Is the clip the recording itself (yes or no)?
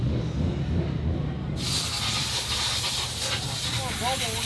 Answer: yes